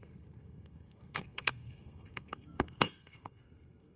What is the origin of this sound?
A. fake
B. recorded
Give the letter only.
A